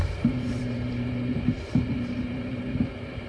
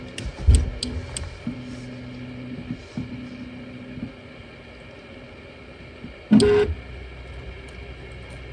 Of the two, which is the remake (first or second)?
first